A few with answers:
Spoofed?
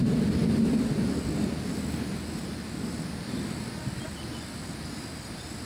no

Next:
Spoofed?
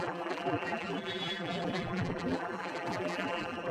yes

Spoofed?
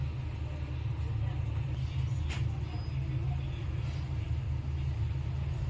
no